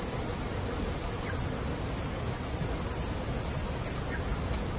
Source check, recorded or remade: recorded